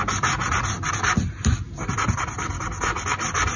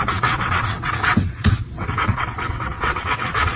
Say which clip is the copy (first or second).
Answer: second